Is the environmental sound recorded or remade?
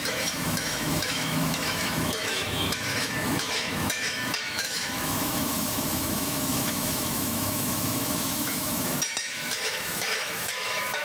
remade